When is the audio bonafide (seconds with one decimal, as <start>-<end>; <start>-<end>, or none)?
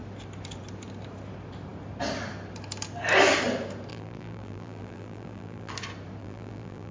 0.0-3.9; 5.7-6.2